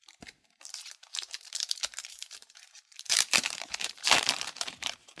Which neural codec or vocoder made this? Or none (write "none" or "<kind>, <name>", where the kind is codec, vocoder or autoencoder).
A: vocoder, BigVGAN v2